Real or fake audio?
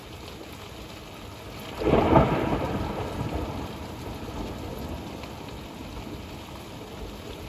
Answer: real